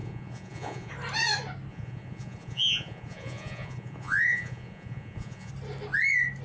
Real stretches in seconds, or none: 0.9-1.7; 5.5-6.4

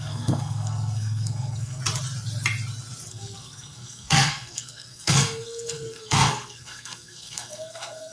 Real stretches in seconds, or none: 1.8-3.1

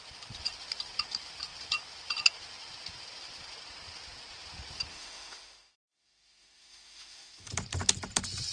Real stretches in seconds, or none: 0.0-4.9; 7.5-8.5

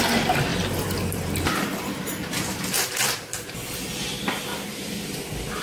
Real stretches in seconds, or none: 0.0-0.5; 3.5-4.5

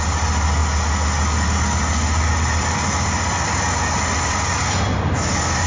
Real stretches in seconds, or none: 0.0-5.7

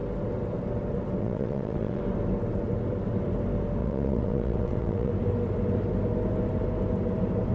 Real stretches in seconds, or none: 0.0-1.2; 2.0-3.8; 5.1-7.5

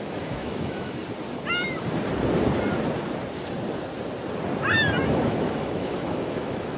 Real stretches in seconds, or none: 1.0-5.1

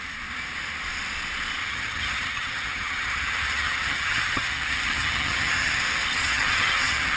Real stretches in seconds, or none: 0.0-1.6; 5.8-6.2